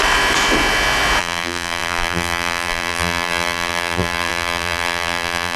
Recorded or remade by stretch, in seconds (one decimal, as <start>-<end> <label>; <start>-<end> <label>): 0.0-1.2 recorded; 1.2-5.6 remade